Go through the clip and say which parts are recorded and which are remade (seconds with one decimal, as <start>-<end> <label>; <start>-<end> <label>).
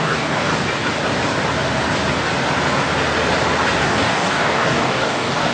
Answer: 0.0-0.5 remade; 0.5-3.8 recorded; 3.8-5.5 remade